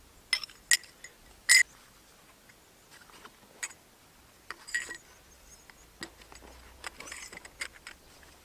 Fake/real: real